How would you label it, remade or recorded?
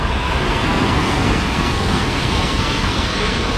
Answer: remade